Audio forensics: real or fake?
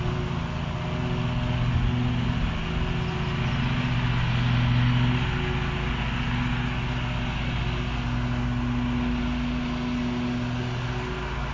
real